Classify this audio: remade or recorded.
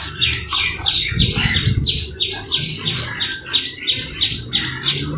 recorded